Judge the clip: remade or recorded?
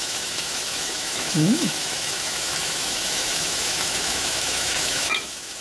remade